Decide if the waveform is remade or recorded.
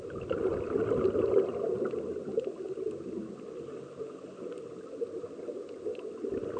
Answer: recorded